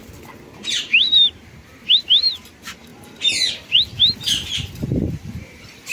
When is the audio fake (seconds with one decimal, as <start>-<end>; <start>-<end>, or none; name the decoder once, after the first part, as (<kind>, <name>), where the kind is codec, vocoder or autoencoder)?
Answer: 1.0-3.9 (vocoder, BigVGAN v2); 4.8-5.9